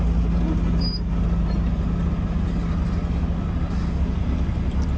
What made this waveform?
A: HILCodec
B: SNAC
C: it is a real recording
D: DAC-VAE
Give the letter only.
C